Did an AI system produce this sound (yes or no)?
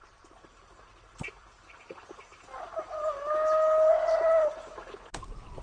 no